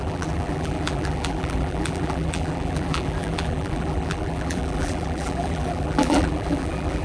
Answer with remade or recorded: remade